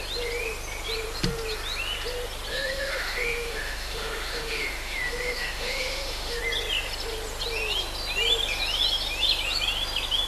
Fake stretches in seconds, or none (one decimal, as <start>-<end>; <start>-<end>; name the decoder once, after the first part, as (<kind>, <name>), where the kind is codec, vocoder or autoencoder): 2.5-6.4 (autoencoder, DAC-VAE)